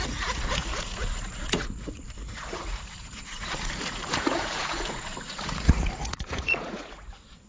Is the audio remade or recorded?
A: remade